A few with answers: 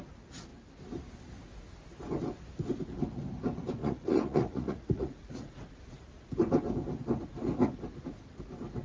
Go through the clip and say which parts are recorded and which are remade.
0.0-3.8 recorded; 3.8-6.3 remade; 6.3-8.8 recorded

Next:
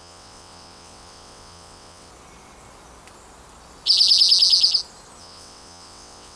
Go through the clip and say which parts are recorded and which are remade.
0.0-2.1 remade; 2.1-5.2 recorded; 5.2-6.4 remade

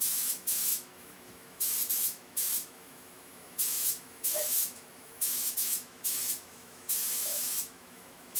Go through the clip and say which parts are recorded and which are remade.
0.0-8.4 remade

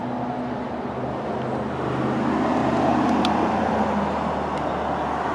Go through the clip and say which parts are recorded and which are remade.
0.0-5.3 recorded

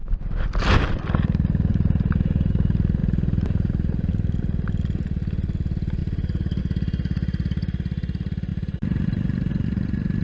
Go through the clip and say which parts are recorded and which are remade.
0.0-1.7 recorded; 1.7-2.5 remade; 2.5-3.0 recorded; 3.0-4.1 remade; 4.1-6.0 recorded; 6.0-6.6 remade; 6.6-8.5 recorded; 8.5-9.5 remade; 9.5-10.2 recorded

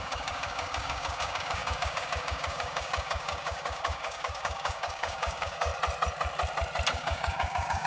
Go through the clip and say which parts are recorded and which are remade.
0.0-5.7 remade; 5.7-6.9 recorded; 6.9-7.9 remade

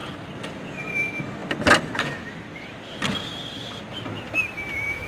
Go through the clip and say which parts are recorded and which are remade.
0.0-5.1 recorded